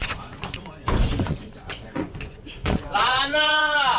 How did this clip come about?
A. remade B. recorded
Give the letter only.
A